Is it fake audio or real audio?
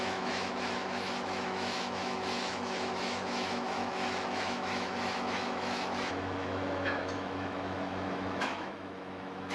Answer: fake